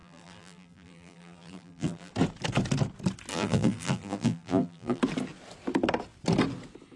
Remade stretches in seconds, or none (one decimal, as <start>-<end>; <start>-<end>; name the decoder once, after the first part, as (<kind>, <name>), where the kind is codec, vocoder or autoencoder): 0.0-2.1 (vocoder, BigVGAN v2); 3.3-5.0